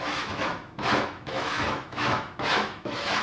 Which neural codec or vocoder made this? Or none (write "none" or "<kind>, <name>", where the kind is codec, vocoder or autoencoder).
autoencoder, DAC-VAE